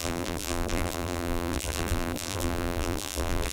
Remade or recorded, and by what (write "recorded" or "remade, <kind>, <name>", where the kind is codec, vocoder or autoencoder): remade, vocoder, BigVGAN v2